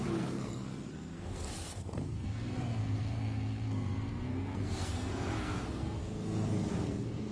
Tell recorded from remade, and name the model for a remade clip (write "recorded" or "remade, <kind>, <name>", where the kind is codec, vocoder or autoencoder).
remade, codec, SNAC